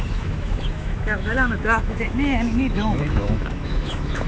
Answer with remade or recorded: remade